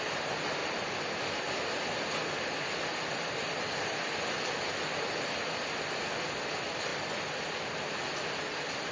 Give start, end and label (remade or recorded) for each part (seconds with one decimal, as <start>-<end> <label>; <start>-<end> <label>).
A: 0.0-8.9 recorded